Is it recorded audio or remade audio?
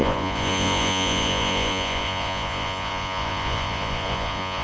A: remade